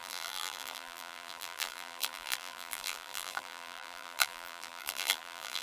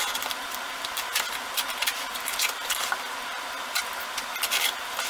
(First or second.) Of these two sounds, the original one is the second